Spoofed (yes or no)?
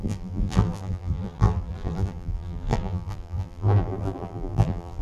yes